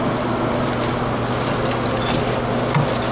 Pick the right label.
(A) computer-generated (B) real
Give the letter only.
B